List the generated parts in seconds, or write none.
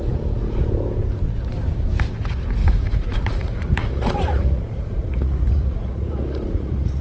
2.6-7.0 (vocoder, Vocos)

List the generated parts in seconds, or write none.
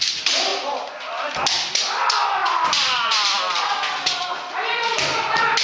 none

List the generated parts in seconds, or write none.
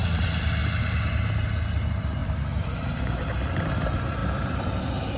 none